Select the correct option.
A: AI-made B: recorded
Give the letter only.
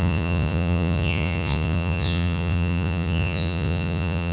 A